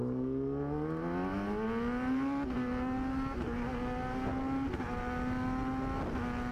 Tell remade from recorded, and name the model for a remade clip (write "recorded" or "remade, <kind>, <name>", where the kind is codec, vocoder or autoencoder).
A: recorded